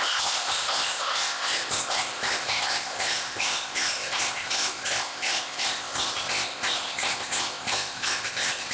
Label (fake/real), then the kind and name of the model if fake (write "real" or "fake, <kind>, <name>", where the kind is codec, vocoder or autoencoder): fake, codec, ZipCodec